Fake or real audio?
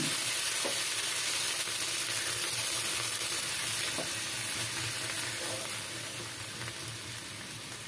real